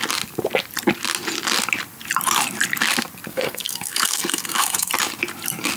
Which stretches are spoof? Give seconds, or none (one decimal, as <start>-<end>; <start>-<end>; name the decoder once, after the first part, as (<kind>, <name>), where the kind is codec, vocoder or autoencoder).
3.3-4.9 (codec, SNAC)